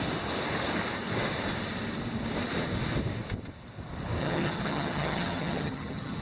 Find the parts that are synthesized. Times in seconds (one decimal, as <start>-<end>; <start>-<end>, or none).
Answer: 4.2-6.2